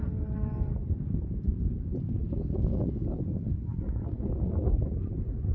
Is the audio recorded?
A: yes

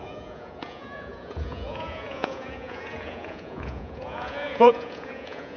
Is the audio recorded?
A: no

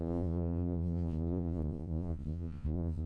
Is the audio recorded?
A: no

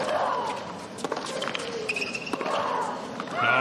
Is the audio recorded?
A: yes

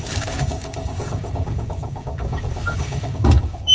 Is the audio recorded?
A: no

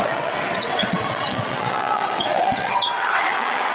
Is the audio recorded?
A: no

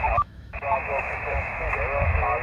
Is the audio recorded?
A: no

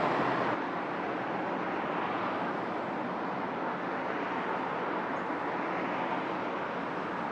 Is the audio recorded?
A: yes